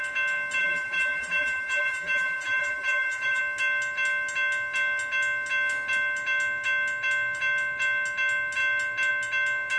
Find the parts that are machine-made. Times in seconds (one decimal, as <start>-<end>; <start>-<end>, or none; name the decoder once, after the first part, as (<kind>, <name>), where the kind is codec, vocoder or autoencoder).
0.6-3.4 (vocoder, BigVGAN v2)